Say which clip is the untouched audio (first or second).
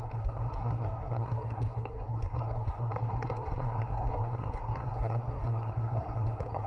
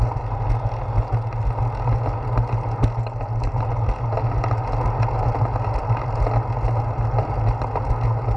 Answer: second